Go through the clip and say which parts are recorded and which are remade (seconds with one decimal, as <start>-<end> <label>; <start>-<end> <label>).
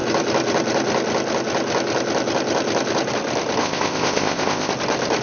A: 0.0-3.6 recorded; 3.6-4.7 remade; 4.7-5.2 recorded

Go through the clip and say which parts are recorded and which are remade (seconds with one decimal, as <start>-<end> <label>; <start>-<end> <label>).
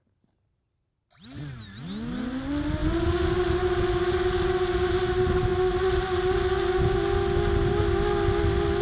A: 0.0-8.8 recorded